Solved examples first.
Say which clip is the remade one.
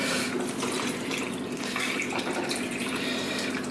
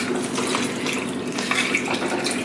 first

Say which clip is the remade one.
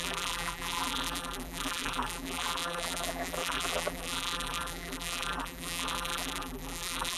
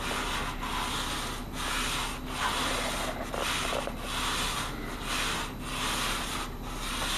first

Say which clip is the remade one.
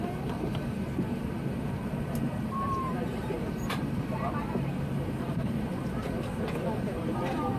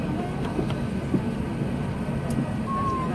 first